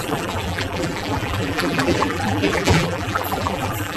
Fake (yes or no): yes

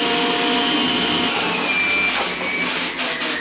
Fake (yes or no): no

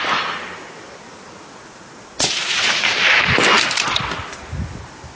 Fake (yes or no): no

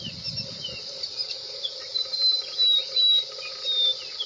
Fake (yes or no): no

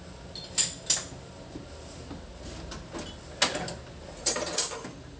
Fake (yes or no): no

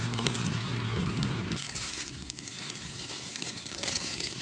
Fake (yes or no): yes